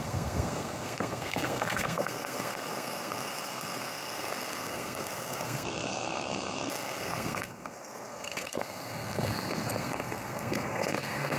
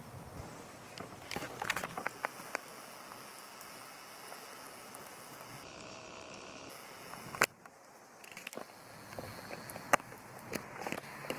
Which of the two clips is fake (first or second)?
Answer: first